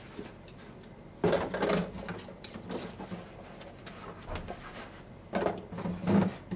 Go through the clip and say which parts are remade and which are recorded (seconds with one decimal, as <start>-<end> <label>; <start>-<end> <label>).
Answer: 0.0-6.6 recorded